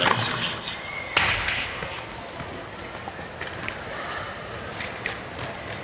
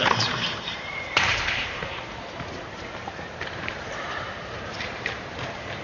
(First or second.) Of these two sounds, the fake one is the second